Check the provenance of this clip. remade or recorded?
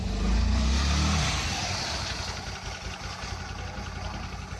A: recorded